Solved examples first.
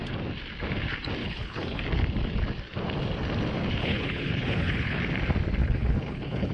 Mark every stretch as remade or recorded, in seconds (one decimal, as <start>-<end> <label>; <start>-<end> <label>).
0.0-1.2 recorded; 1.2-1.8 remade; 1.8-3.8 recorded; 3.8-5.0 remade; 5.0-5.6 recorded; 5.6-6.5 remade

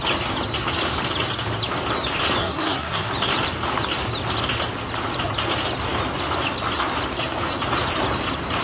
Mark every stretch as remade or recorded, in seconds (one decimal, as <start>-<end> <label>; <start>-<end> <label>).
0.0-2.4 recorded; 2.4-3.1 remade; 3.1-8.6 recorded

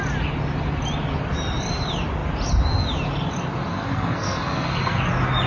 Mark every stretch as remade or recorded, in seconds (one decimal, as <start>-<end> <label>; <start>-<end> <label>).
0.0-3.7 recorded; 3.7-5.0 remade; 5.0-5.5 recorded

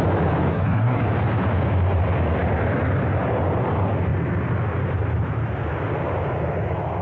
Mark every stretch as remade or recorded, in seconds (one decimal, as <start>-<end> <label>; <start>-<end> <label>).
0.0-0.5 recorded; 0.5-1.0 remade; 1.0-7.0 recorded